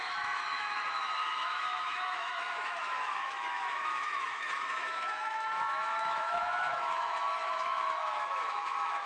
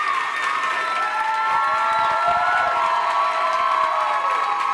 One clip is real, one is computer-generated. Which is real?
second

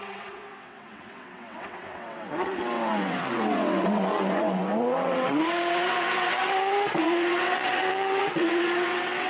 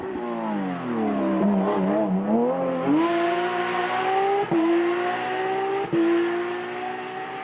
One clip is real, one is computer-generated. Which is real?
second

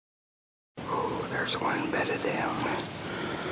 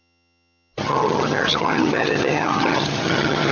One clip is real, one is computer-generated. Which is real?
first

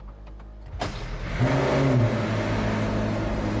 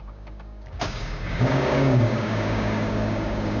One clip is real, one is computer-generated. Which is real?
first